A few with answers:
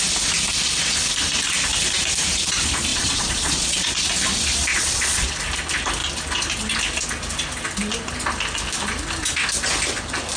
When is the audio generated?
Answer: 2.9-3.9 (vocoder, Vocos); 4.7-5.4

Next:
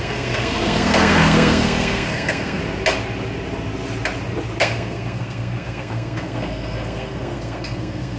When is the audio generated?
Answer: 0.0-2.6 (codec, SNAC); 4.6-8.2

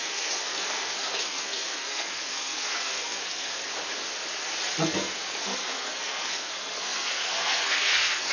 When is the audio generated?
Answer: 0.0-3.6 (codec, SNAC); 4.8-8.3